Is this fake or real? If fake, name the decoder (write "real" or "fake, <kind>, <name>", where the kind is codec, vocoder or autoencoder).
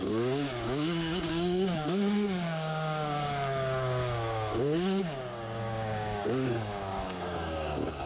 fake, codec, DAC